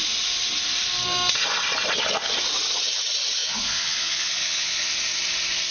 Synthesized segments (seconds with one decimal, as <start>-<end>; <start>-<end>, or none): 3.4-4.9